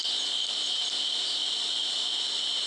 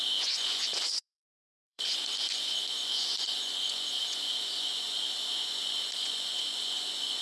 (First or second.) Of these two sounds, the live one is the first